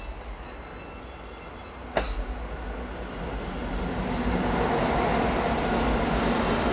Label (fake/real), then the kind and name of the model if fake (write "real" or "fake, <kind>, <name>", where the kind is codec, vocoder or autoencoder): real